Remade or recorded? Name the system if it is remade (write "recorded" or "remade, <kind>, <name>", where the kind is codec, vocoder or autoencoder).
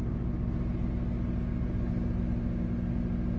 recorded